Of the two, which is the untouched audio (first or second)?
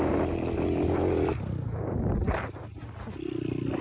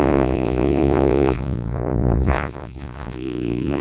first